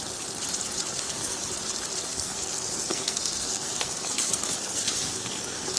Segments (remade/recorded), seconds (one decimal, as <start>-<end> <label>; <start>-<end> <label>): 0.0-0.9 recorded; 0.9-1.5 remade; 1.5-2.1 recorded; 2.1-5.8 remade